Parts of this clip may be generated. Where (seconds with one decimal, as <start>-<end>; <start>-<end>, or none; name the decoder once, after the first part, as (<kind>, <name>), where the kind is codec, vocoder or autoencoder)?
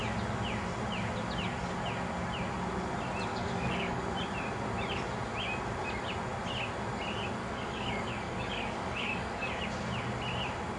3.3-4.0 (codec, DAC); 7.4-9.5